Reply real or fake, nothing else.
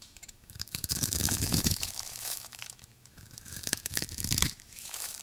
fake